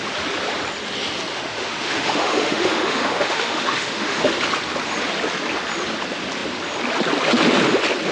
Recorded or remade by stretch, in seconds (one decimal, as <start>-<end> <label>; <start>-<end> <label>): 0.0-1.3 recorded; 1.3-4.3 remade; 4.3-8.1 recorded